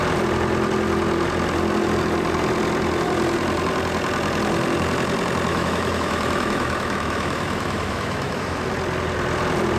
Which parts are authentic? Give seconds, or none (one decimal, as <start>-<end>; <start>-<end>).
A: 0.0-5.5; 8.6-9.8